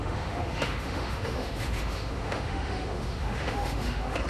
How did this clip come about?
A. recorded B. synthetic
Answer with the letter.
B